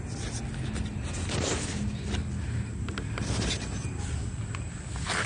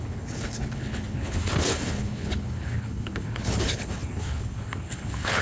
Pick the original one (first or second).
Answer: first